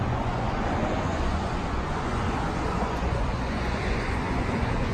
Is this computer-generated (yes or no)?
yes